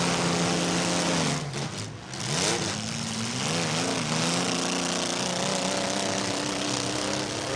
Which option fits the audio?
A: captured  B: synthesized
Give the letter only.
A